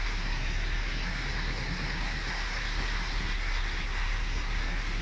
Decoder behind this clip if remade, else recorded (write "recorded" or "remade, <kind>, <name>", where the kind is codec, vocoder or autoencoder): remade, codec, SNAC